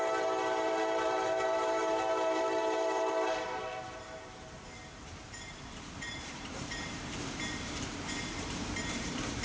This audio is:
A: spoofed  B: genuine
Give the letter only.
A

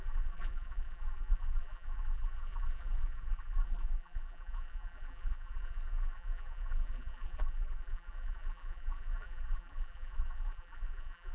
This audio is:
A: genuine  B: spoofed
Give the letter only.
B